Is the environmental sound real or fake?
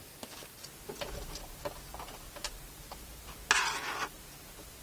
real